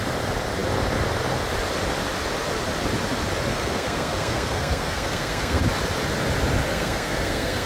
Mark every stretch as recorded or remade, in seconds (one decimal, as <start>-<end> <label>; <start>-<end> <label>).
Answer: 0.0-3.5 recorded; 3.5-5.6 remade; 5.6-6.7 recorded; 6.7-7.7 remade